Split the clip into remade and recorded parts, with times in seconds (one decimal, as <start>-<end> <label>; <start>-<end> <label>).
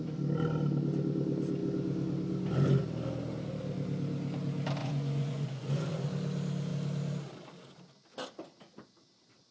0.0-4.8 recorded; 4.8-5.9 remade; 5.9-9.5 recorded